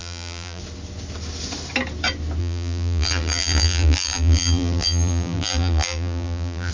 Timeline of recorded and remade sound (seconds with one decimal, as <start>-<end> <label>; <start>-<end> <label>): 0.0-0.6 remade; 0.6-2.4 recorded; 2.4-6.7 remade